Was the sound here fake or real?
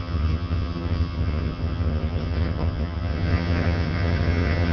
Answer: fake